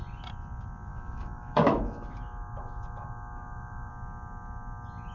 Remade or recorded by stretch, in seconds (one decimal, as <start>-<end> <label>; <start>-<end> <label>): 0.0-0.9 recorded; 0.9-3.9 remade; 3.9-5.1 recorded